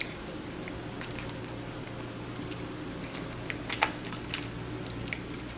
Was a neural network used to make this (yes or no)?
no